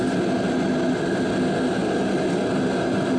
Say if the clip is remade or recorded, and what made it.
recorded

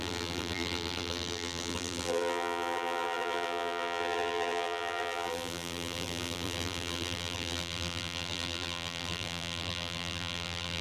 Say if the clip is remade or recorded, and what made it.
remade, vocoder, BigVGAN v2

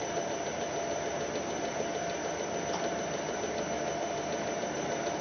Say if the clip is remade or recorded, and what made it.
remade, vocoder, BigVGAN v2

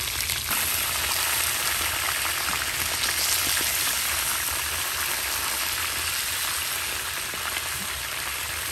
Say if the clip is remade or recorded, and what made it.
recorded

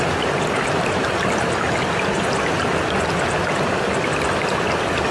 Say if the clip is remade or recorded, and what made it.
recorded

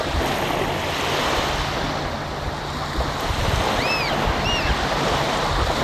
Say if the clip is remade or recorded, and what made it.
recorded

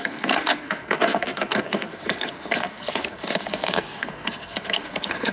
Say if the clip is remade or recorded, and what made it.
remade, codec, SNAC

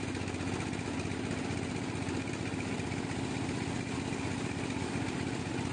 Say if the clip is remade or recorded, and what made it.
recorded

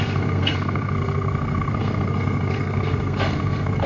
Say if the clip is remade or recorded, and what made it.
remade, codec, SNAC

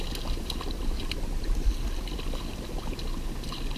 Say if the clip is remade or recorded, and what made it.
recorded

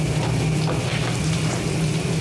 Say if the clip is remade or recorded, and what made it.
recorded